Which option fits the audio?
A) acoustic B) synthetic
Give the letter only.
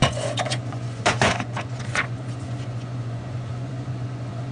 B